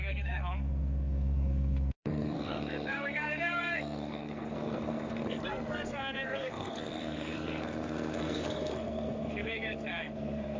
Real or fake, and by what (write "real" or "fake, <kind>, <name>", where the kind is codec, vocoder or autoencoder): fake, codec, SNAC